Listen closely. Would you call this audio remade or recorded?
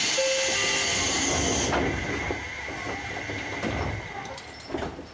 recorded